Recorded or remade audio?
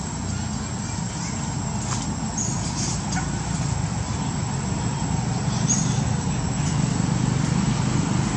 recorded